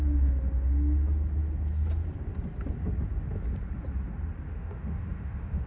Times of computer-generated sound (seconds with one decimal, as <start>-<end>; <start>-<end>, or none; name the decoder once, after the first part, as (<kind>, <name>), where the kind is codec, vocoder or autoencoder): 4.5-5.7 (autoencoder, DAC-VAE)